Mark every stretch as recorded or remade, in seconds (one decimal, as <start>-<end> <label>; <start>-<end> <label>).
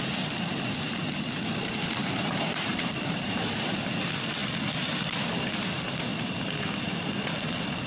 0.0-2.0 recorded; 2.0-3.7 remade; 3.7-7.9 recorded